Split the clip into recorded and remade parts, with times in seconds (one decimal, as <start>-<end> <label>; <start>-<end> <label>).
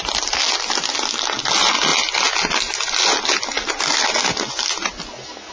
0.0-5.5 recorded